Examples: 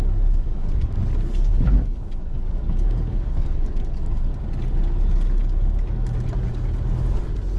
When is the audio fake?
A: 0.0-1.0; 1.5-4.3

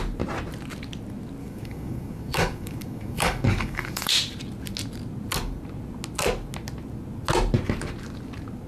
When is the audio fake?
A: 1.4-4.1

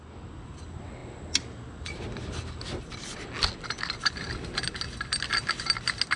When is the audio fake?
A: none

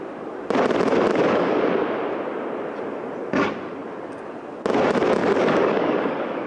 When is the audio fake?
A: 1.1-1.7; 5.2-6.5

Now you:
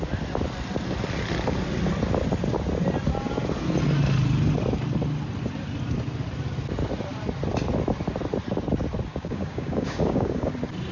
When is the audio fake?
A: 9.1-10.5

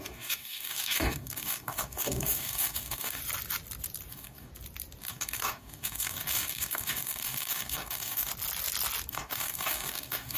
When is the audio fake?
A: 0.0-3.2; 4.1-4.5; 5.0-8.3; 9.1-10.4

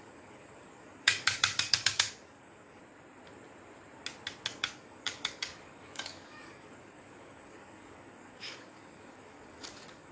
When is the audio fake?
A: 0.0-2.8; 4.5-10.1